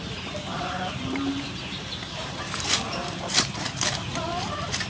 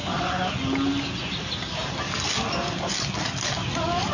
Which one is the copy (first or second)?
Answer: first